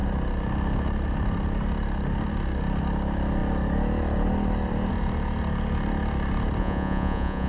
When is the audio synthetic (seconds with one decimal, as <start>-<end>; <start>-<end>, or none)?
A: 6.6-7.5